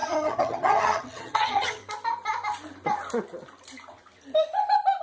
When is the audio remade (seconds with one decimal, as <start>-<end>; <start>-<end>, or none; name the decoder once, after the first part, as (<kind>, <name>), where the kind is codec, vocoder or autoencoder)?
0.0-1.8 (vocoder, HiFi-GAN)